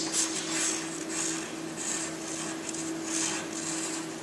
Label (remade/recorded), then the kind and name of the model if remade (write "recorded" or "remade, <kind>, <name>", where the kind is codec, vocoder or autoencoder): recorded